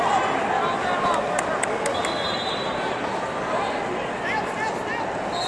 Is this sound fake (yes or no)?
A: no